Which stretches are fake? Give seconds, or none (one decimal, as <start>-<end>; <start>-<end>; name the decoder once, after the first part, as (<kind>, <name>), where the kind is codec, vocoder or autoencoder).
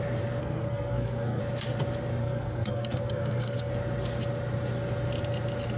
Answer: 0.4-1.4 (codec, SNAC); 2.2-3.7